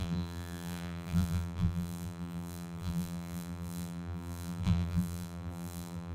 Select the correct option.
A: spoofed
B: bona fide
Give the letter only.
A